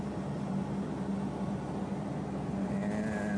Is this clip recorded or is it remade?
recorded